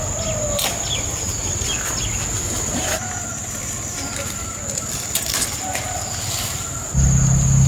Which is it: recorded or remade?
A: recorded